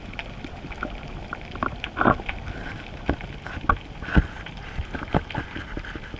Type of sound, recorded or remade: recorded